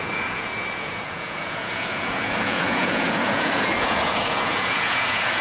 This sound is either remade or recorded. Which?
remade